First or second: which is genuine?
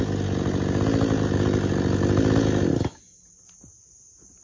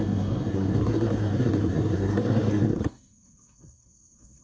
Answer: first